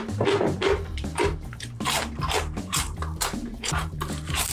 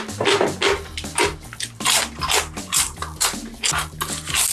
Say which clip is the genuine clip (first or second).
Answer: second